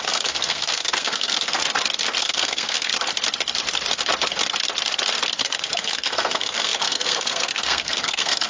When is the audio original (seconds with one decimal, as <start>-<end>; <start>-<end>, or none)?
1.6-2.2; 2.9-5.4